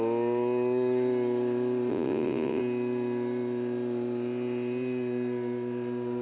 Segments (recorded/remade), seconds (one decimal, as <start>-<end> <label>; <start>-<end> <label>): 0.0-1.9 recorded; 1.9-2.6 remade; 2.6-6.2 recorded